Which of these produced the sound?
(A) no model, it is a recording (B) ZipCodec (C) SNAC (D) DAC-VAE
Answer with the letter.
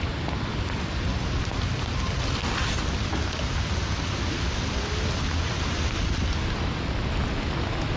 A